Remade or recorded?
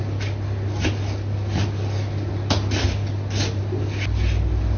recorded